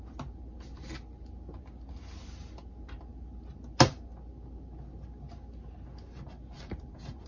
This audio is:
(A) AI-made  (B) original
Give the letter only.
B